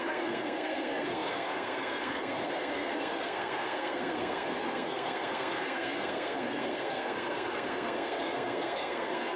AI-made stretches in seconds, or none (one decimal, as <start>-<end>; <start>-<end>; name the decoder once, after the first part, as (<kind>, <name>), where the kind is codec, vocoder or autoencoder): 0.0-9.4 (codec, SNAC)